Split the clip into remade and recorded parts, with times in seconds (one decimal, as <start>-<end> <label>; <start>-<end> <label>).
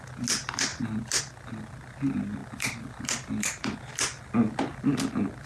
0.0-2.4 recorded; 2.4-3.0 remade; 3.0-5.5 recorded